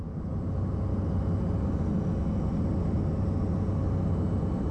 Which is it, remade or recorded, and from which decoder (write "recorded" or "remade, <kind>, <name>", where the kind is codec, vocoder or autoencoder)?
recorded